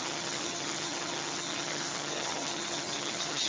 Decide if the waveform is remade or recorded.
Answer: remade